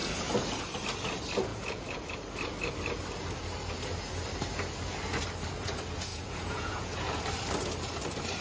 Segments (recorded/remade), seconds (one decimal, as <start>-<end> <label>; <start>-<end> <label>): 0.0-1.5 recorded; 1.5-2.1 remade; 2.1-6.1 recorded; 6.1-7.2 remade; 7.2-8.4 recorded